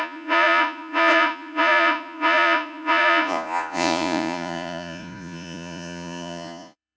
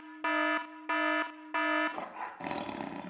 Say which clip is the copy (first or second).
first